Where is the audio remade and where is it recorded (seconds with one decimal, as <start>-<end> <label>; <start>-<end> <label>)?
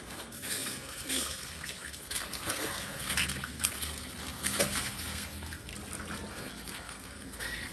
0.0-5.7 remade; 5.7-6.3 recorded; 6.3-7.7 remade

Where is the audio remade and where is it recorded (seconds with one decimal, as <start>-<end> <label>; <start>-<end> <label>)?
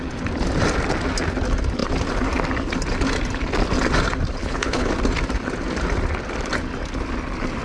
0.0-4.4 recorded; 4.4-4.9 remade; 4.9-7.6 recorded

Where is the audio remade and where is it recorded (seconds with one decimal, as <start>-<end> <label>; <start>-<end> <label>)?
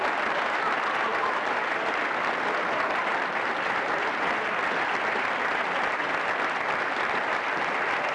0.0-8.1 recorded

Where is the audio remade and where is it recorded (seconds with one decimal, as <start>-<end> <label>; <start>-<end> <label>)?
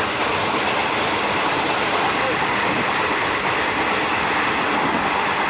0.0-5.5 recorded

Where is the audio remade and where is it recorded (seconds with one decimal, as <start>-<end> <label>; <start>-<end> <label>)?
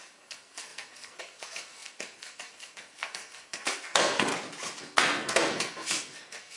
0.0-4.3 remade; 4.3-4.8 recorded; 4.8-6.6 remade